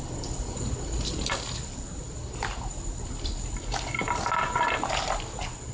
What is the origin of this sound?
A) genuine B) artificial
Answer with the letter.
A